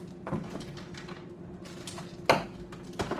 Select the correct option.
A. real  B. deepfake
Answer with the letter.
A